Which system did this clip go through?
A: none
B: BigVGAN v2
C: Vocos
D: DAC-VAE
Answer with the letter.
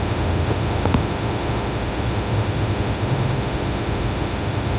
D